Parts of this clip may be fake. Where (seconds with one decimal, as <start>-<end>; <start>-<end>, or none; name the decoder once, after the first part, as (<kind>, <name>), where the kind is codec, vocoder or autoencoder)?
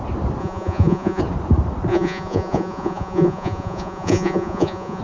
0.4-1.2 (vocoder, Vocos); 1.9-5.0